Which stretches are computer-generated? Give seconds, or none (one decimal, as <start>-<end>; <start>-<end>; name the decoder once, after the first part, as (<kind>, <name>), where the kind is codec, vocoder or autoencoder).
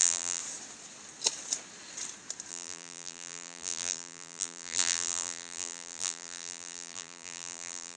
0.0-0.4 (vocoder, BigVGAN v2); 2.5-8.0